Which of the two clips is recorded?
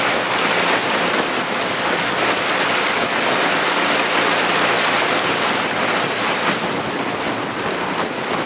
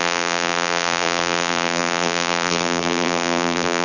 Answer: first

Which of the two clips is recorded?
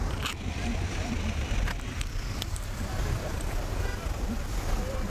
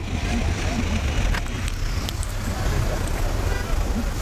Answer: second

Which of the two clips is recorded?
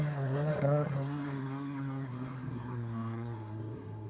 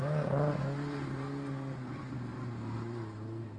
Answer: second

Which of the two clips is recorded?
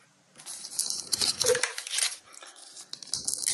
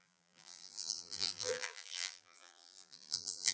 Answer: first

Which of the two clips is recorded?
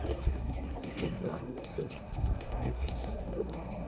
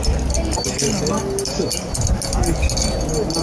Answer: second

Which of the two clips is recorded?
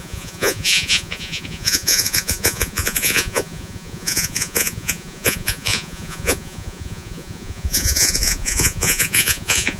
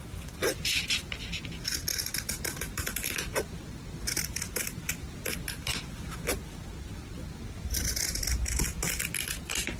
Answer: second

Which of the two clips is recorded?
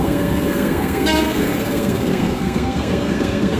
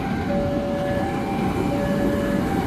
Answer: second